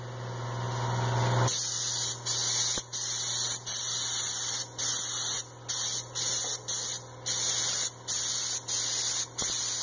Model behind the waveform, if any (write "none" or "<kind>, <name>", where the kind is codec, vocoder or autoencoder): none